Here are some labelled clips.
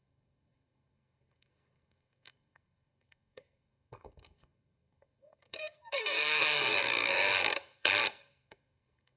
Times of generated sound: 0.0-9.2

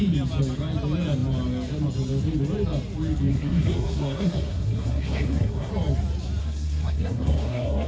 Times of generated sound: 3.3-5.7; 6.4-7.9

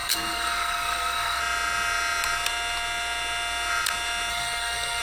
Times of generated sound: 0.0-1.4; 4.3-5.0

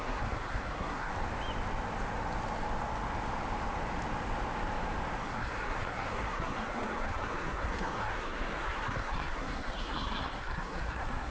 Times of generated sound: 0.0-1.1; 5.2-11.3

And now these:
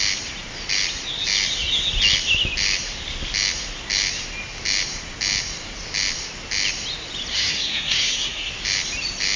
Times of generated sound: 7.3-8.5